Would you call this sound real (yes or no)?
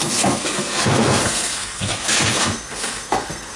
no